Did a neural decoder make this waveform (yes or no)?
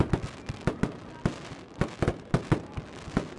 no